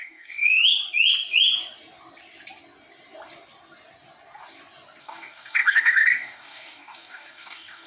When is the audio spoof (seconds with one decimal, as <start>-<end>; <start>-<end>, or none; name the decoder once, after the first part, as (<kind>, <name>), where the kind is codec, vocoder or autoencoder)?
0.0-0.6 (codec, DAC); 5.0-7.9